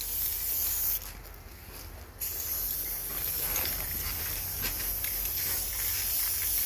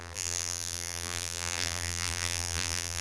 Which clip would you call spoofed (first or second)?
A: second